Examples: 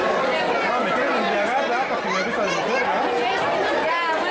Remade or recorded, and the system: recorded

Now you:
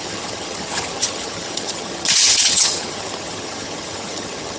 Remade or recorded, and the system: remade, vocoder, HiFi-GAN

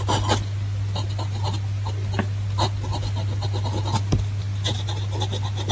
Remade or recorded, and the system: recorded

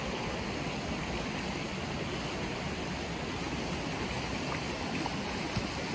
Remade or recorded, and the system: recorded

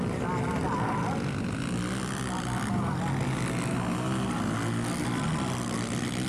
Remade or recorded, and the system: recorded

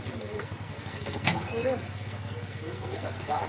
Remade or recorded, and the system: remade, codec, SNAC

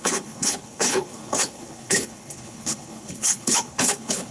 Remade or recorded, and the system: remade, codec, HILCodec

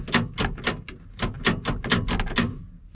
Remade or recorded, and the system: recorded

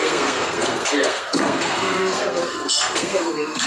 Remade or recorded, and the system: remade, codec, SNAC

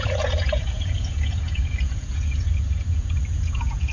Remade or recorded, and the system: remade, vocoder, Vocos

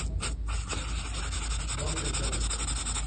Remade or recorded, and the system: recorded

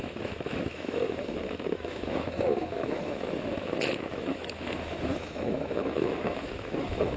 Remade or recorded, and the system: remade, autoencoder, DAC-VAE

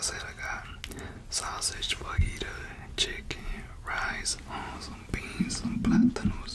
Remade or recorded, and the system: recorded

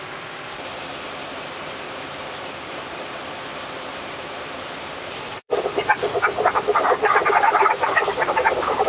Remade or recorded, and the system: remade, vocoder, BigVGAN v2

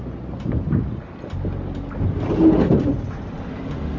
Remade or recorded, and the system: recorded